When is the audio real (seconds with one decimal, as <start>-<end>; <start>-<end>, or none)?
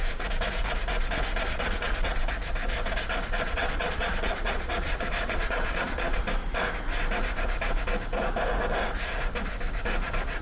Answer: 0.0-1.4; 2.2-3.2; 6.2-10.4